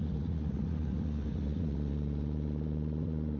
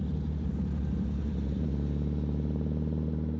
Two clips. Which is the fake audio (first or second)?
first